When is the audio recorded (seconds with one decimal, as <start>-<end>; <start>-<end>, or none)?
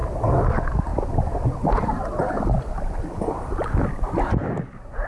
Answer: 0.0-5.1